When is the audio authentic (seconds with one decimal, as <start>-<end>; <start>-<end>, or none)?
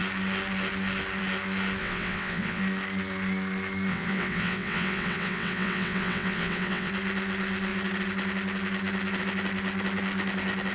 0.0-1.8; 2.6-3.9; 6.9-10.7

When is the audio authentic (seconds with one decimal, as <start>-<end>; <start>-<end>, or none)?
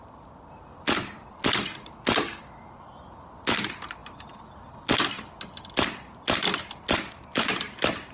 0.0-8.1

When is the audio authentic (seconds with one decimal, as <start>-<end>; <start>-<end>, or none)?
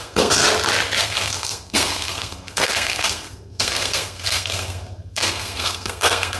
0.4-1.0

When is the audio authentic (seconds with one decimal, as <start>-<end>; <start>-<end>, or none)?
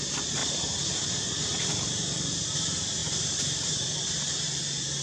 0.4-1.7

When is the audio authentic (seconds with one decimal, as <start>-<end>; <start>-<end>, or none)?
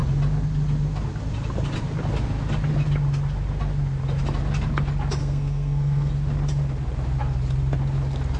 0.0-5.2; 6.1-8.4